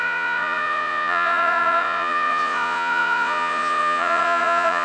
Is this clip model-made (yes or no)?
yes